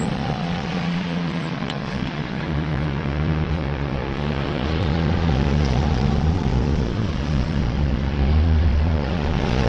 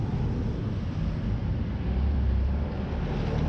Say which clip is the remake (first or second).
first